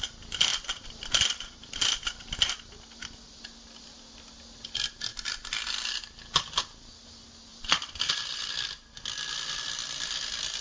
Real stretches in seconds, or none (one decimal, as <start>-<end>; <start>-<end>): 0.0-0.5; 2.1-5.1; 5.6-7.5; 8.5-10.6